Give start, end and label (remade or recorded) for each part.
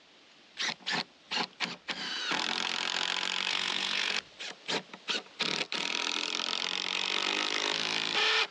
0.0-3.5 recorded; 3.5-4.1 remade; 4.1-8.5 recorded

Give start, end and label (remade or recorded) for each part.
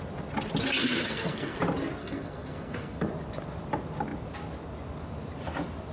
0.0-0.8 recorded; 0.8-1.6 remade; 1.6-2.0 recorded; 2.0-3.1 remade; 3.1-5.9 recorded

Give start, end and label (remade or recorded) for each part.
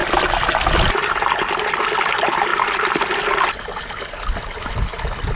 0.0-5.4 recorded